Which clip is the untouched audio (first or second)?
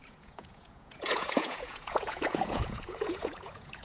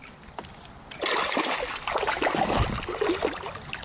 second